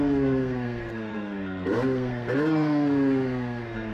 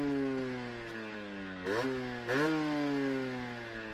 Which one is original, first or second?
second